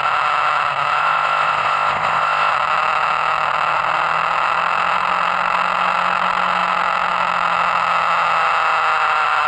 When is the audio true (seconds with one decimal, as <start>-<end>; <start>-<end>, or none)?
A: 0.0-1.0; 2.5-9.5